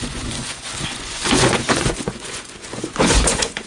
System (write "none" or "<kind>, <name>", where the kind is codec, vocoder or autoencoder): vocoder, Vocos